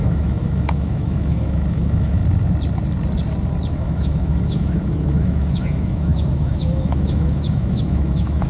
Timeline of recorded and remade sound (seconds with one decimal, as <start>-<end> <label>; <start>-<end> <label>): 0.0-2.2 remade; 2.2-3.7 recorded; 3.7-8.5 remade